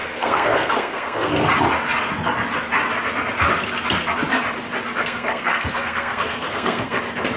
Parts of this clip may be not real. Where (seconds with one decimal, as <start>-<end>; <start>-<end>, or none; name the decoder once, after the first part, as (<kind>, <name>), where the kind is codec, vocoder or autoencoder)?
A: 0.0-1.3 (codec, SNAC); 5.0-7.0